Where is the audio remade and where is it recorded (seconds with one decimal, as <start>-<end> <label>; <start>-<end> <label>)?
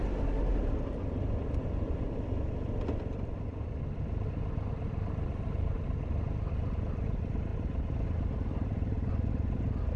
0.0-5.3 recorded; 5.3-5.8 remade; 5.8-7.5 recorded; 7.5-9.1 remade; 9.1-10.0 recorded